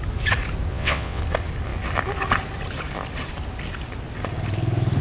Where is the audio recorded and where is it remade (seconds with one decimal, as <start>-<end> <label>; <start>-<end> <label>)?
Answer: 0.0-0.7 recorded; 0.7-1.2 remade; 1.2-5.0 recorded